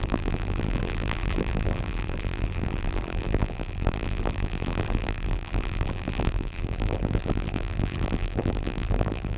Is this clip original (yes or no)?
no